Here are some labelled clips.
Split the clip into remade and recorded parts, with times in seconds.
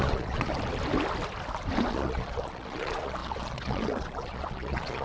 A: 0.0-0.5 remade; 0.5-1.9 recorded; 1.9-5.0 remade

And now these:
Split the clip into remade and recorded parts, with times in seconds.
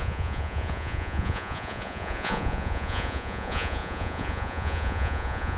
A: 0.0-5.6 remade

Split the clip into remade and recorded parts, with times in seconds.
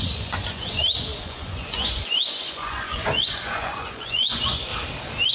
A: 0.0-4.7 remade; 4.7-5.3 recorded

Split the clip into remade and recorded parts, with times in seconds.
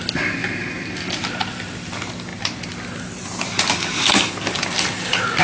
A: 0.0-5.4 recorded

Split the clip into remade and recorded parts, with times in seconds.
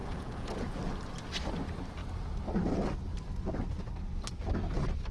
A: 0.0-0.8 remade; 0.8-5.1 recorded